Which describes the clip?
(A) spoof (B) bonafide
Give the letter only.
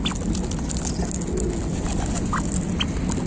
B